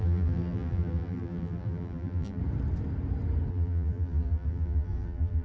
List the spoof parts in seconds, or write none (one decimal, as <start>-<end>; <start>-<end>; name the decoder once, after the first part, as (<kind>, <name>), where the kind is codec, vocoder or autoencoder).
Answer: 0.0-2.4 (vocoder, BigVGAN v2); 3.5-5.4